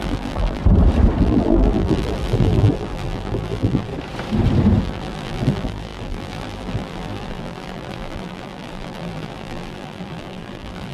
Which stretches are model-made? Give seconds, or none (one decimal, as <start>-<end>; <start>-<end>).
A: 0.0-0.6; 1.2-3.9; 4.8-10.9